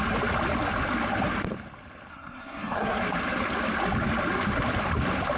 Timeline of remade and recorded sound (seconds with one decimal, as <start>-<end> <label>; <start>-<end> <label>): 0.0-2.1 recorded; 2.1-3.0 remade; 3.0-5.4 recorded